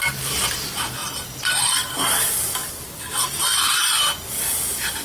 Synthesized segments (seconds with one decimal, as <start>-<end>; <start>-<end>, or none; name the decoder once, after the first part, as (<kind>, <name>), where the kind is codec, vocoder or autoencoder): 1.0-3.2 (vocoder, BigVGAN v2)